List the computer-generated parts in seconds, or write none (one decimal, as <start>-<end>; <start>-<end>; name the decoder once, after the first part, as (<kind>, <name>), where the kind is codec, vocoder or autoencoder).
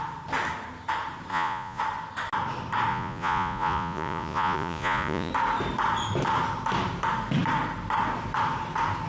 1.3-1.8 (vocoder, Vocos); 2.9-5.3